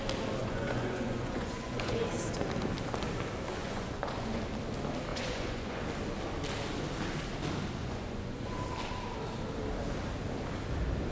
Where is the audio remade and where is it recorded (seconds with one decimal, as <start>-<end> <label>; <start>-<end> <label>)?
0.0-0.4 recorded; 0.4-2.1 remade; 2.1-3.6 recorded; 3.6-4.4 remade; 4.4-5.1 recorded; 5.1-5.8 remade; 5.8-7.8 recorded; 7.8-8.6 remade; 8.6-11.1 recorded